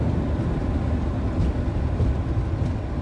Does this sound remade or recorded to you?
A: recorded